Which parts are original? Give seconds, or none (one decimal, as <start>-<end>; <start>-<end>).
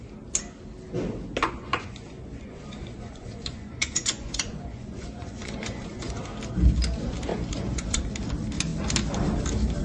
0.0-1.4; 6.2-7.3; 8.0-9.8